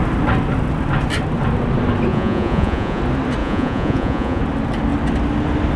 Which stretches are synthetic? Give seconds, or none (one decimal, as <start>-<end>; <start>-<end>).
2.1-3.0; 3.4-4.4